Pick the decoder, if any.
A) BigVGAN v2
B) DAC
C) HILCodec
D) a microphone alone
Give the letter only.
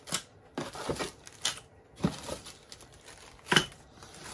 D